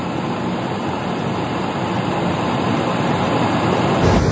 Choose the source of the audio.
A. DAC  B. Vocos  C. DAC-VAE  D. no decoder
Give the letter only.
D